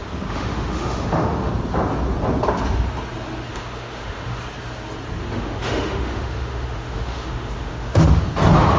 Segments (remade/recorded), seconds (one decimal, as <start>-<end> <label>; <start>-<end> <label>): 0.0-1.5 remade; 1.5-3.5 recorded; 3.5-4.4 remade; 4.4-5.2 recorded; 5.2-8.2 remade; 8.2-8.8 recorded